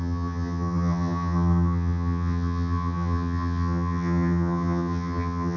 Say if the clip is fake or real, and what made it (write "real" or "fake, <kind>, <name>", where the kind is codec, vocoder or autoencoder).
fake, vocoder, HiFi-GAN